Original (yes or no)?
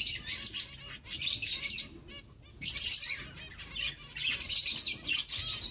yes